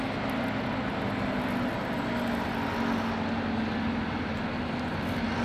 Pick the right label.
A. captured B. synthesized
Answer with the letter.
A